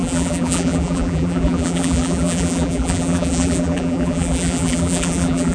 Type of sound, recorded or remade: remade